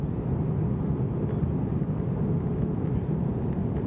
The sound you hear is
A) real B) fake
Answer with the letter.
A